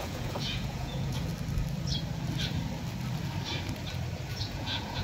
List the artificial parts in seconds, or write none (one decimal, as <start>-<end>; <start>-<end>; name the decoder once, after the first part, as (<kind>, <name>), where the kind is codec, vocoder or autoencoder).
0.0-1.3 (vocoder, Vocos); 4.3-5.0